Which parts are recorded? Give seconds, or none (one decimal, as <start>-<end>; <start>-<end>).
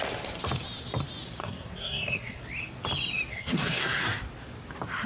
0.0-1.4; 2.4-3.3; 4.0-5.1